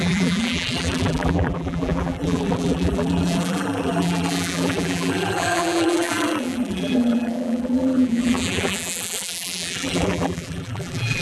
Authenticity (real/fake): fake